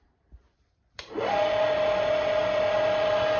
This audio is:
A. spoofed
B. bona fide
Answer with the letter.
A